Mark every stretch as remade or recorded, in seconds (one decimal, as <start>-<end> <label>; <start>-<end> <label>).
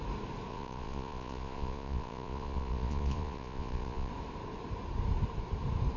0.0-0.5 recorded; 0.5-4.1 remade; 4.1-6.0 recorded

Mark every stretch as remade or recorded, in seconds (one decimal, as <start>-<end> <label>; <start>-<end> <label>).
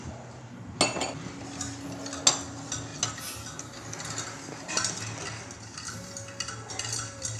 0.0-7.4 recorded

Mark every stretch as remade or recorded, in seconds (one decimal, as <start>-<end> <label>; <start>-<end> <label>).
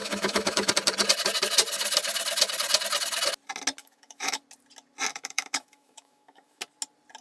0.0-0.7 remade; 0.7-3.8 recorded; 3.8-4.4 remade; 4.4-5.1 recorded; 5.1-6.6 remade; 6.6-7.2 recorded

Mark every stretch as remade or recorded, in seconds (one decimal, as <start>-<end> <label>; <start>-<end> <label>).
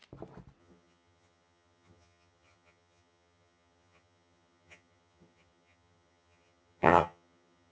0.0-0.6 recorded; 0.6-7.7 remade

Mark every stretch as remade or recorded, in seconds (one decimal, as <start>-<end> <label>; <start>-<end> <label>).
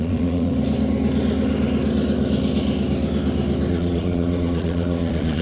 0.0-0.5 remade; 0.5-3.7 recorded; 3.7-5.4 remade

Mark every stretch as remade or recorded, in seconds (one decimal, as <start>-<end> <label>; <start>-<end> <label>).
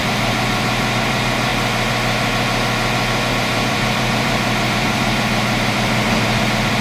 0.0-1.5 remade; 1.5-3.3 recorded; 3.3-6.8 remade